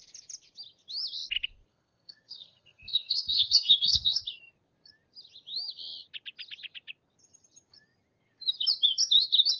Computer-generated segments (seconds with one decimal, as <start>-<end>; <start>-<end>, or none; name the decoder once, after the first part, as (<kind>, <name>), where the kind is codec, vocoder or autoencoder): 1.7-4.2 (codec, SNAC)